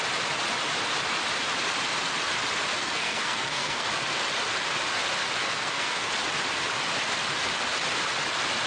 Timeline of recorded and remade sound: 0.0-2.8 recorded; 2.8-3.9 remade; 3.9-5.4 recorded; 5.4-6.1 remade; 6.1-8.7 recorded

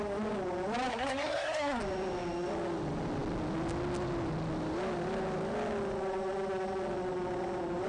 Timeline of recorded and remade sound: 0.0-0.9 recorded; 0.9-1.8 remade; 1.8-7.9 recorded

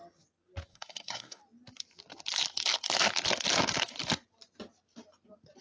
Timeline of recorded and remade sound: 0.0-0.7 recorded; 0.7-1.4 remade; 1.4-5.6 recorded

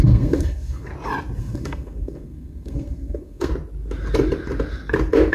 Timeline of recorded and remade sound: 0.0-0.9 remade; 0.9-1.4 recorded; 1.4-3.5 remade; 3.5-5.3 recorded

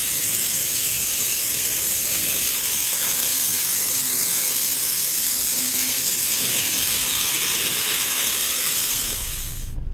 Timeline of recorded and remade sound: 0.0-9.9 remade

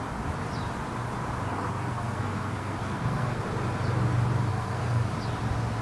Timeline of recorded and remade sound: 0.0-1.5 recorded; 1.5-3.4 remade; 3.4-4.5 recorded; 4.5-5.1 remade; 5.1-5.8 recorded